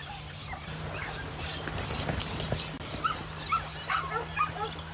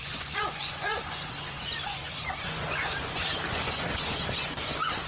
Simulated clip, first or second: second